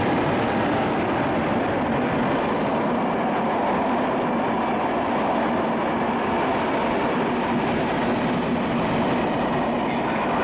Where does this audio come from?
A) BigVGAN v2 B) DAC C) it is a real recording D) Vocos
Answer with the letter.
C